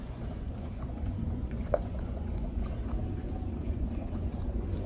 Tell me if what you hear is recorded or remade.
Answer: remade